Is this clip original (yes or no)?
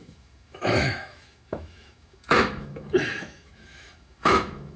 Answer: no